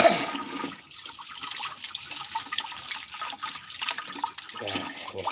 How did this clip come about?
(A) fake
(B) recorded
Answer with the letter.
B